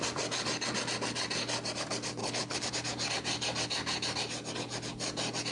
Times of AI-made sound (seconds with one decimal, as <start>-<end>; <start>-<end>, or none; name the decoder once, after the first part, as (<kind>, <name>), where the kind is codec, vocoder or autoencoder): 2.2-2.7 (codec, HILCodec)